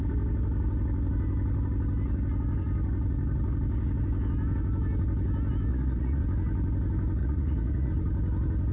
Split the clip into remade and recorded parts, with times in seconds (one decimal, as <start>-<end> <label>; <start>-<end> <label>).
0.0-5.7 recorded; 5.7-6.2 remade; 6.2-7.2 recorded; 7.2-7.9 remade; 7.9-8.7 recorded